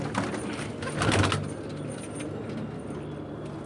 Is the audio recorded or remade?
recorded